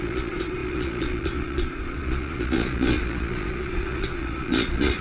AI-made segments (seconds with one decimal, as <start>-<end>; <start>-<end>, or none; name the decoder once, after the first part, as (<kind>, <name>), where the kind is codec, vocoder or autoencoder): 0.0-5.0 (vocoder, Vocos)